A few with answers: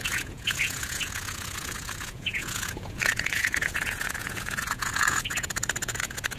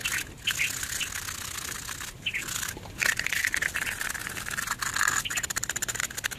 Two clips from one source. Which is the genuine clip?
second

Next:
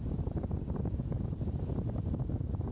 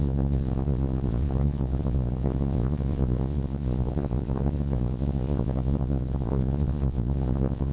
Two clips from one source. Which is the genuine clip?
first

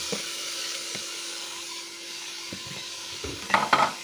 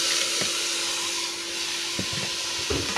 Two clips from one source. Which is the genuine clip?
second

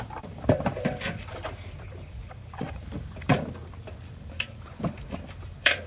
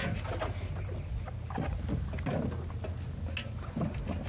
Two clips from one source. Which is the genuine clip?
second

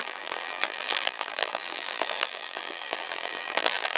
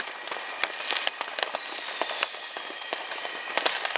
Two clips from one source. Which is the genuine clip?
second